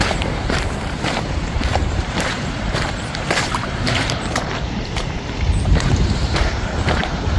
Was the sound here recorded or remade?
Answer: remade